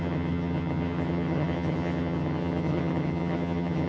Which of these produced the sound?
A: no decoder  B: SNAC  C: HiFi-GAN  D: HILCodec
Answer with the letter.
C